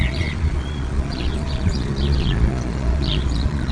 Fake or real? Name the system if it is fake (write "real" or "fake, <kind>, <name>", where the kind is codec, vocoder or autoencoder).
fake, vocoder, Vocos